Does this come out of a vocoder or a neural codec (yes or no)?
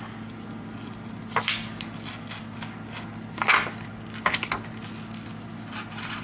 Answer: no